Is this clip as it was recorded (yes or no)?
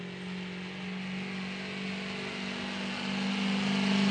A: yes